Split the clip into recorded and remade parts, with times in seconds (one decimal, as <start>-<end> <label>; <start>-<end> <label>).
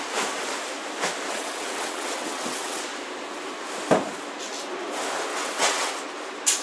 0.0-1.3 recorded; 1.3-2.8 remade; 2.8-5.3 recorded; 5.3-5.9 remade; 5.9-6.6 recorded